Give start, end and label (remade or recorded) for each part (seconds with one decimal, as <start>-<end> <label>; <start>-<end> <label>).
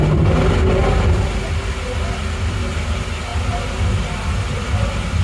0.0-5.2 recorded